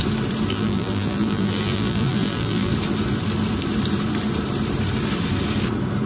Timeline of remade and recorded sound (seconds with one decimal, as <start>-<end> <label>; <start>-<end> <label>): 0.0-0.5 recorded; 0.5-2.7 remade; 2.7-6.1 recorded